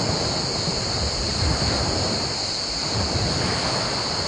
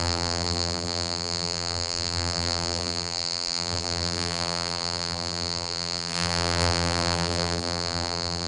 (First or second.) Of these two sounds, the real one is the first